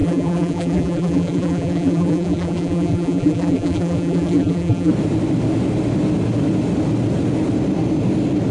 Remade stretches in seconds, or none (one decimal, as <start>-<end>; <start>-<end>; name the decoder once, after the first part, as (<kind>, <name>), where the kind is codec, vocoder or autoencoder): 0.0-4.9 (vocoder, BigVGAN v2)